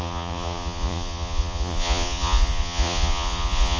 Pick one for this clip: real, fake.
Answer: fake